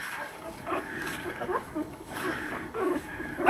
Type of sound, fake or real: fake